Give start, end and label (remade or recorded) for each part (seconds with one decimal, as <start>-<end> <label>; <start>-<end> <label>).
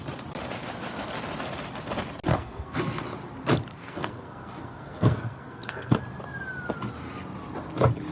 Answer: 0.0-2.3 recorded; 2.3-2.8 remade; 2.8-3.7 recorded; 3.7-6.0 remade; 6.0-8.1 recorded